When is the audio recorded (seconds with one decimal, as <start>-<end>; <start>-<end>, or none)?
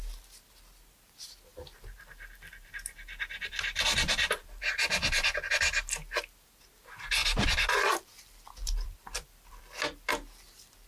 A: 0.0-1.5; 4.6-7.2; 10.1-10.9